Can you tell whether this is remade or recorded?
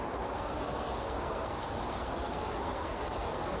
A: remade